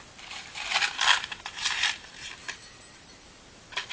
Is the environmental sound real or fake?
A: real